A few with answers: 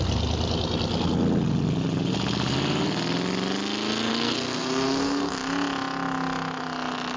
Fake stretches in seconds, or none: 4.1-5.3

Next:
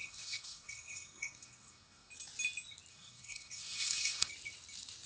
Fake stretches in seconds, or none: 0.0-2.1; 2.9-4.3

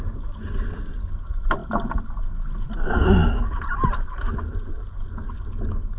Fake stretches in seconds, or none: none

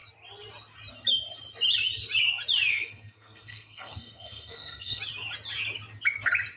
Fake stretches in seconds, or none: 2.7-5.0